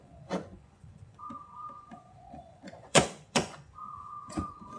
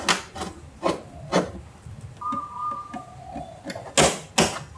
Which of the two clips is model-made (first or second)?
first